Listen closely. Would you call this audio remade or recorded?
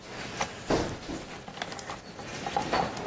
recorded